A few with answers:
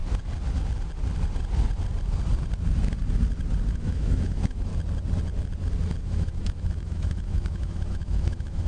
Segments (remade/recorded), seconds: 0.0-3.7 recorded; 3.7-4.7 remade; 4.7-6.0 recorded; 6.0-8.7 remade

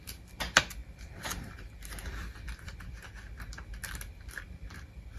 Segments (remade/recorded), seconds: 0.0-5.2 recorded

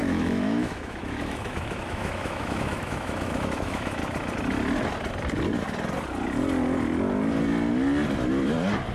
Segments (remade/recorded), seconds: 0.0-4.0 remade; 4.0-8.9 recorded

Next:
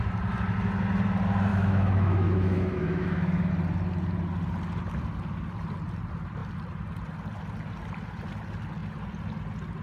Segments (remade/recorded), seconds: 0.0-1.5 recorded; 1.5-3.5 remade; 3.5-9.8 recorded

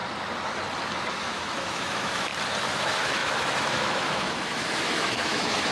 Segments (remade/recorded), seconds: 0.0-1.1 recorded; 1.1-2.3 remade; 2.3-2.8 recorded; 2.8-5.7 remade

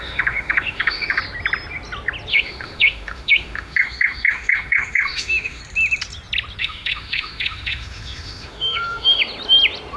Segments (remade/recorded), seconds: 0.0-1.2 remade; 1.2-2.3 recorded; 2.3-5.6 remade; 5.6-6.6 recorded; 6.6-9.2 remade; 9.2-10.0 recorded

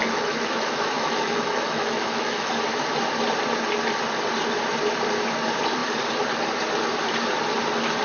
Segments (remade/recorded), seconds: 0.0-2.5 remade; 2.5-8.0 recorded